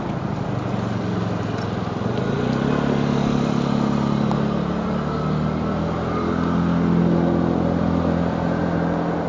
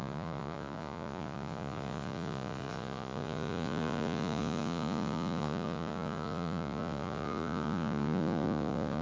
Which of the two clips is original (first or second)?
first